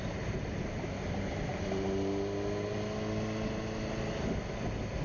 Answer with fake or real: real